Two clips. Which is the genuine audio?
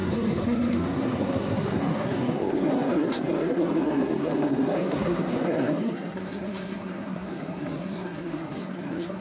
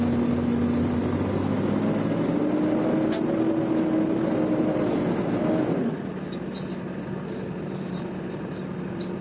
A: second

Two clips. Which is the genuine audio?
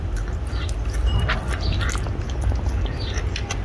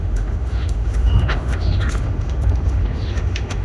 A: first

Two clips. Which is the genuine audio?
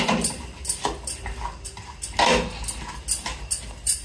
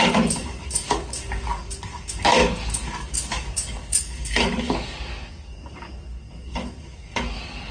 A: first